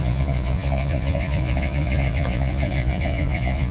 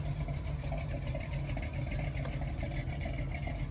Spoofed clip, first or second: first